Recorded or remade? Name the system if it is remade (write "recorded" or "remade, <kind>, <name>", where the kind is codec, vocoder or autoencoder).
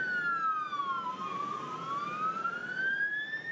recorded